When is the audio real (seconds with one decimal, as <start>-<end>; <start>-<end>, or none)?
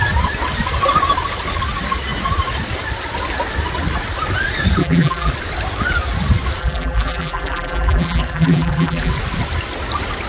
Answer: 0.0-4.8; 5.3-6.6; 9.1-10.3